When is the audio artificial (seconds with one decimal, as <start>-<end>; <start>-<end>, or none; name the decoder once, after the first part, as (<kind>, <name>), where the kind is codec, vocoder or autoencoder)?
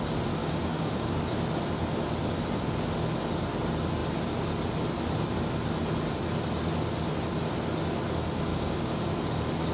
0.4-1.2 (codec, DAC); 8.5-9.1